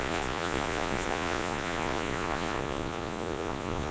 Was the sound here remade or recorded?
remade